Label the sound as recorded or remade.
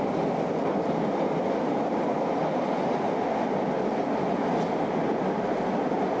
recorded